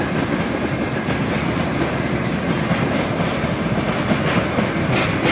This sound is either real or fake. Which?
real